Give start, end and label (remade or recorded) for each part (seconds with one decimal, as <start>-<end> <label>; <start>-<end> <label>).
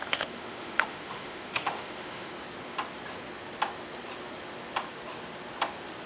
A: 0.0-2.3 remade; 2.3-6.1 recorded